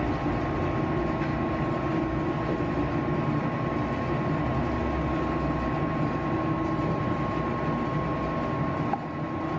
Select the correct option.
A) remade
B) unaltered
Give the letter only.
B